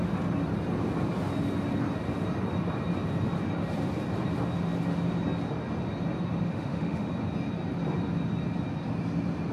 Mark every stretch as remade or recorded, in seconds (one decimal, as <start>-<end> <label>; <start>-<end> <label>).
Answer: 0.0-6.5 recorded; 6.5-7.1 remade; 7.1-9.5 recorded